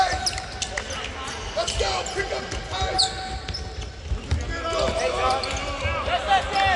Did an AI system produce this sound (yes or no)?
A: no